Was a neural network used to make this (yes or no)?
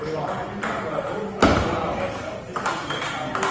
no